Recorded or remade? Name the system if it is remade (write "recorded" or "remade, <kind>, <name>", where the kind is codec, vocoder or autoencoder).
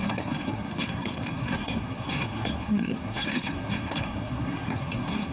remade, codec, SNAC